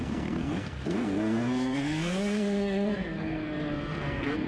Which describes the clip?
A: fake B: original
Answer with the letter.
A